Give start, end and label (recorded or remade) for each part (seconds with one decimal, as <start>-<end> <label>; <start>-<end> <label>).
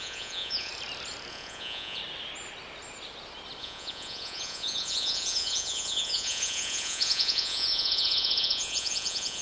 0.0-0.7 remade; 0.7-1.3 recorded; 1.3-2.0 remade; 2.0-3.6 recorded; 3.6-9.4 remade